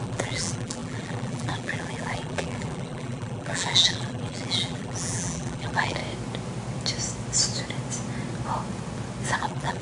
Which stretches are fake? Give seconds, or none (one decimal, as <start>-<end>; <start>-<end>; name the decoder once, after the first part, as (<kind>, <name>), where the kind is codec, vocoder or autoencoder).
0.0-6.0 (vocoder, BigVGAN v2); 9.4-9.8